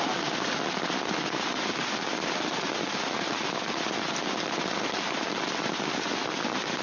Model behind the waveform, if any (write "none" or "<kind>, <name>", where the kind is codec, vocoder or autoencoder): none